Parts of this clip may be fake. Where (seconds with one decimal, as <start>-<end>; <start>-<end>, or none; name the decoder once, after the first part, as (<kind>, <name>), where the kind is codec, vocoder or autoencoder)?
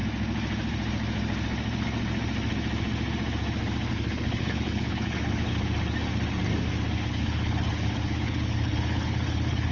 3.9-5.5 (codec, HILCodec); 7.1-9.7